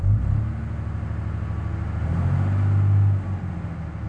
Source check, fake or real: real